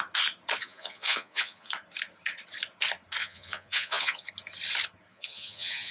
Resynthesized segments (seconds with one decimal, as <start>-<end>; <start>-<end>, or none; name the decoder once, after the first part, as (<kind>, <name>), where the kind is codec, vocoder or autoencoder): 0.6-1.7 (vocoder, Vocos); 3.2-4.3; 5.1-5.9